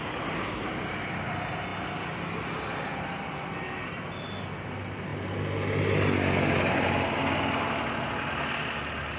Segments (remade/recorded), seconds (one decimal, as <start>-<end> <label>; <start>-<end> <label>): 0.0-9.2 recorded